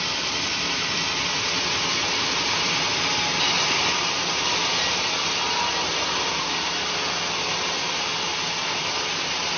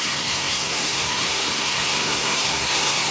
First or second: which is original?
first